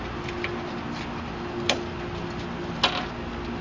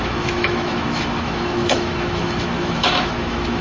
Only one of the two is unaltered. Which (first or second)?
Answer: first